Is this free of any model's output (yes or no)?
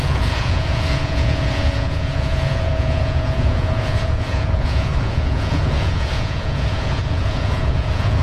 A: no